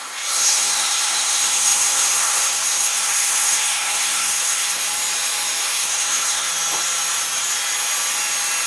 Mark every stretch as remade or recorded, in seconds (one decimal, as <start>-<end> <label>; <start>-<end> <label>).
0.0-4.8 remade; 4.8-5.6 recorded; 5.6-6.5 remade; 6.5-8.7 recorded